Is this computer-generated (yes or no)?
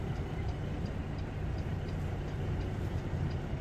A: yes